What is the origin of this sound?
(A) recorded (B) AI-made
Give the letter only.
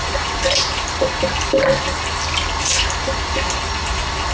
A